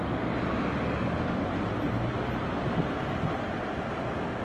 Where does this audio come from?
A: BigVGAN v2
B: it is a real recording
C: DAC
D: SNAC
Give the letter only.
B